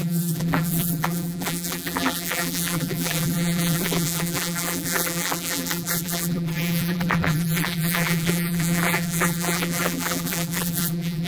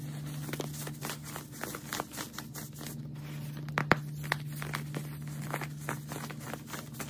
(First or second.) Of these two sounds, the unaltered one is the second